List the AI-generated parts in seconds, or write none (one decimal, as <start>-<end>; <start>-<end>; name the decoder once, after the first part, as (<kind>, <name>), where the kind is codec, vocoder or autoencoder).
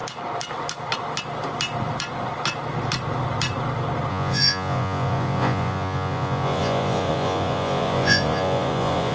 4.1-9.1 (vocoder, Vocos)